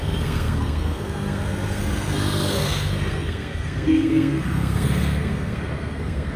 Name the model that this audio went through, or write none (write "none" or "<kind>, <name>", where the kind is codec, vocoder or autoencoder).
codec, SNAC